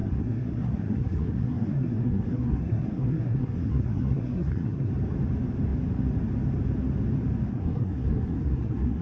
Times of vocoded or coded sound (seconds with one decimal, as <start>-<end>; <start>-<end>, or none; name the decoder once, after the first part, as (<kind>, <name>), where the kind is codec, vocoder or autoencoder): 0.0-4.9 (codec, SNAC); 7.5-9.0